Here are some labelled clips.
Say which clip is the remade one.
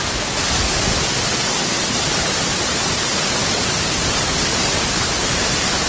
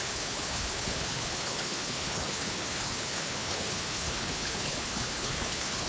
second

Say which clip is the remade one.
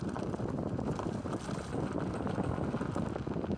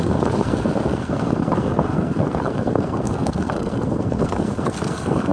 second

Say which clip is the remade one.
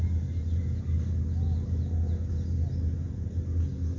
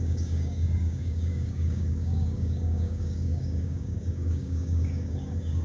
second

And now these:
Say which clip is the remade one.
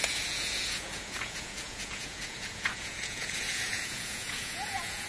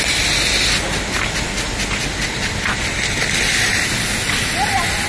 first